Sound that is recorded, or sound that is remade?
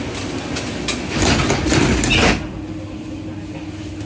recorded